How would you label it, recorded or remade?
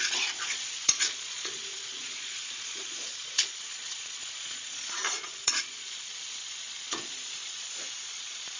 remade